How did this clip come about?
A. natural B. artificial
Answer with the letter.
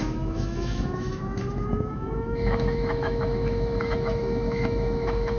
B